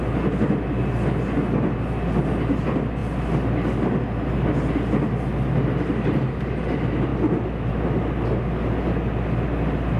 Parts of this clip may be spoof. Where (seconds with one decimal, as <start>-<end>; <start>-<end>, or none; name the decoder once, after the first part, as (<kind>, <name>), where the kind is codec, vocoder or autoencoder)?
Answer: none